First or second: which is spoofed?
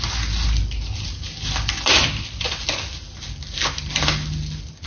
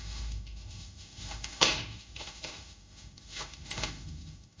second